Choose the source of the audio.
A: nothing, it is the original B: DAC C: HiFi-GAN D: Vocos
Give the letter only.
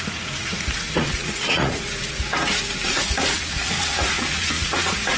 D